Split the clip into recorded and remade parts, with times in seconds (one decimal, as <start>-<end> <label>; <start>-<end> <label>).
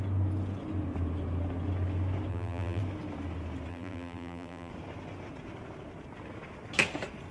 0.0-2.3 recorded; 2.3-2.8 remade; 2.8-3.7 recorded; 3.7-4.7 remade; 4.7-7.3 recorded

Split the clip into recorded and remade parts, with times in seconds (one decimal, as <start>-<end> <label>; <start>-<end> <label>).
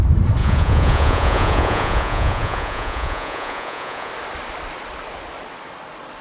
0.0-0.4 recorded; 0.4-4.1 remade; 4.1-6.2 recorded